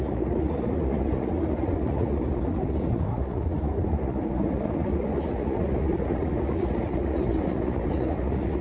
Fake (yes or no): yes